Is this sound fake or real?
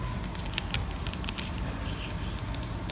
real